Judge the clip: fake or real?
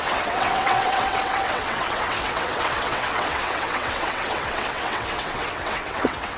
fake